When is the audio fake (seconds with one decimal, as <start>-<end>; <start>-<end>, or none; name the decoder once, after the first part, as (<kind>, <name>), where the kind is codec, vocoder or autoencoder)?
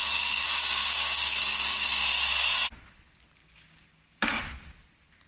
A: 0.0-2.0 (codec, DAC); 3.4-4.4